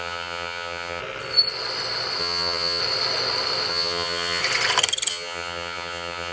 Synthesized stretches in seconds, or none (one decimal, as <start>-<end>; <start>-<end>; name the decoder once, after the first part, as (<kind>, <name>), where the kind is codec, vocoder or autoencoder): 0.0-1.0 (vocoder, HiFi-GAN); 2.2-2.8; 3.7-4.4; 5.1-6.3